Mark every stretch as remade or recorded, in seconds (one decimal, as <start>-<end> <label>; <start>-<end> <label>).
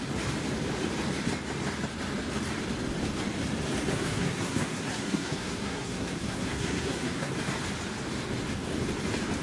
0.0-3.9 recorded; 3.9-7.3 remade; 7.3-9.4 recorded